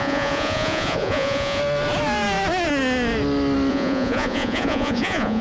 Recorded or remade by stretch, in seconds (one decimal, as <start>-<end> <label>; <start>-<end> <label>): 0.0-1.6 remade; 1.6-3.7 recorded; 3.7-5.4 remade